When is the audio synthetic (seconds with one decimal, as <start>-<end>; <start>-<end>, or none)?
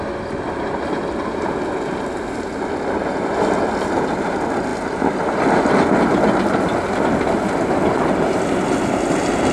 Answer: none